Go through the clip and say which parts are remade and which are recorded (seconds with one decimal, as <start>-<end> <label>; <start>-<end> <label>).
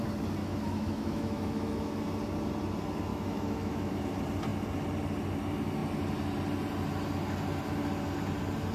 0.0-0.4 recorded; 0.4-2.0 remade; 2.0-3.1 recorded; 3.1-4.0 remade; 4.0-8.7 recorded